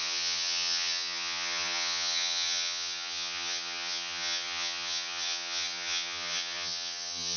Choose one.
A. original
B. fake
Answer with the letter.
B